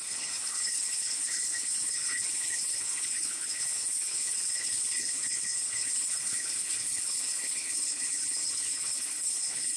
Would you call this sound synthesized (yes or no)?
yes